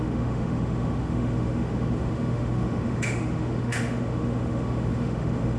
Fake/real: fake